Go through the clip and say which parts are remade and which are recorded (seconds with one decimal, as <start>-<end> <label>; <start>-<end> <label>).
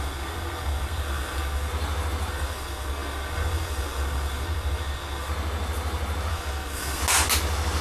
0.0-1.7 remade; 1.7-2.3 recorded; 2.3-5.3 remade; 5.3-6.3 recorded; 6.3-7.0 remade; 7.0-7.8 recorded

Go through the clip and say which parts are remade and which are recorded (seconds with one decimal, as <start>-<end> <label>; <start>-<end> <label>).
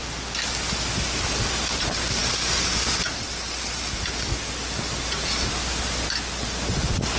0.0-7.2 recorded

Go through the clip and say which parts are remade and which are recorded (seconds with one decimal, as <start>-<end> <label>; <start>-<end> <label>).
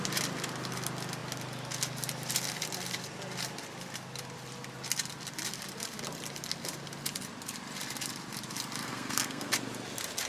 0.0-8.8 recorded; 8.8-9.5 remade; 9.5-10.3 recorded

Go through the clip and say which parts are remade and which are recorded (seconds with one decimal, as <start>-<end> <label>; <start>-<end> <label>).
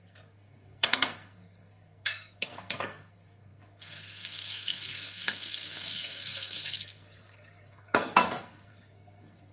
0.0-9.5 remade